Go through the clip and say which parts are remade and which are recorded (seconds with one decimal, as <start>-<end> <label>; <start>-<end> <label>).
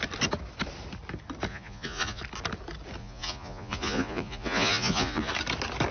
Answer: 0.0-1.5 recorded; 1.5-2.2 remade; 2.2-3.0 recorded; 3.0-5.3 remade; 5.3-5.9 recorded